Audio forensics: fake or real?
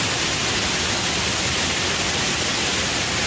real